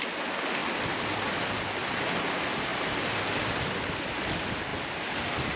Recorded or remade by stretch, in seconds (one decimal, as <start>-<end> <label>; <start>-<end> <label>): 0.0-2.7 recorded; 2.7-3.2 remade; 3.2-5.6 recorded